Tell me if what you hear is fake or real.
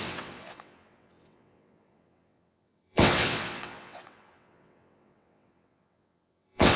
fake